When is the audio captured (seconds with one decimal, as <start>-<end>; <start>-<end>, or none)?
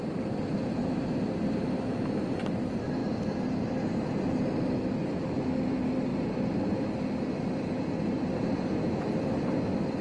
0.0-10.0